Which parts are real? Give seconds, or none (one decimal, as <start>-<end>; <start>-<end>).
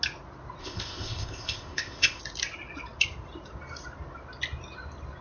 0.0-0.6; 2.2-5.2